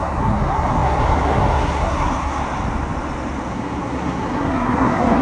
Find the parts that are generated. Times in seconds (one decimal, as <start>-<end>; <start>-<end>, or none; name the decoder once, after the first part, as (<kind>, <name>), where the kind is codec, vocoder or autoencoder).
0.0-2.4 (codec, SNAC); 3.5-5.2